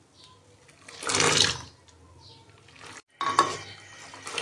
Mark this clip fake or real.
real